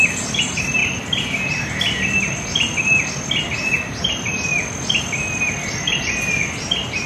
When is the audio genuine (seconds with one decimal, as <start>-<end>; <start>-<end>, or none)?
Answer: 0.0-7.1